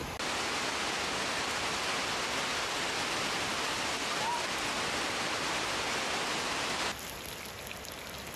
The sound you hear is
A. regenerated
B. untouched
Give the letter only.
B